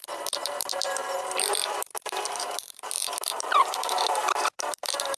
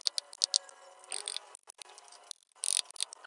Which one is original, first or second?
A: second